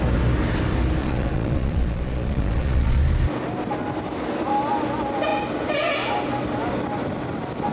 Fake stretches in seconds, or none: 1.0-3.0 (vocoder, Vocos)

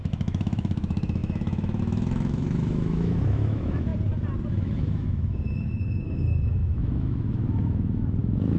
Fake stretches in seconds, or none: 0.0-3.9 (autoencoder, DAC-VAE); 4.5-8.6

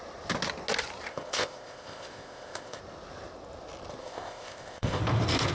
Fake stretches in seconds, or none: 1.1-2.8 (codec, ZipCodec); 4.0-5.0